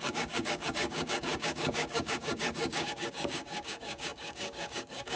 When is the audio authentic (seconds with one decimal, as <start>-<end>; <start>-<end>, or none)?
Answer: none